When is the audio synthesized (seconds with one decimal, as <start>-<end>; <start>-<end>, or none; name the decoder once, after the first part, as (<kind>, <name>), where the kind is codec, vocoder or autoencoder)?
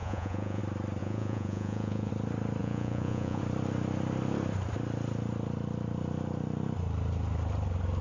0.0-0.6 (vocoder, Vocos); 1.0-2.1; 2.6-3.4